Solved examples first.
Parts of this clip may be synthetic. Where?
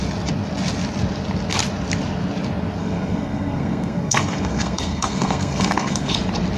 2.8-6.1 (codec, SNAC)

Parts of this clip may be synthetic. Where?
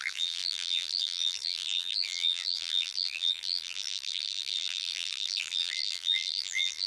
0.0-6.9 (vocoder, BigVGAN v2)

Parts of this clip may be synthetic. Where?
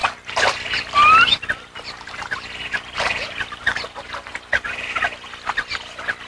none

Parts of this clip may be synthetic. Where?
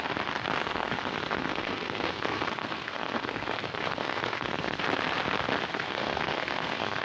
0.6-4.8 (codec, SNAC); 5.7-7.0